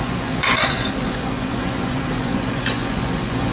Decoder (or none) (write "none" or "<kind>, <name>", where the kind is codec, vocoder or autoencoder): vocoder, Vocos